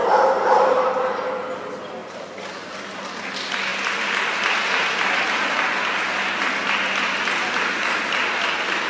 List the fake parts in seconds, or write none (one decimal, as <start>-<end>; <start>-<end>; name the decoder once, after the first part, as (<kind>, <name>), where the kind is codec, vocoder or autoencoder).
0.0-0.9 (vocoder, BigVGAN v2); 2.0-2.7